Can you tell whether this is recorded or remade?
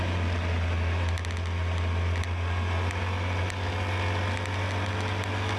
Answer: recorded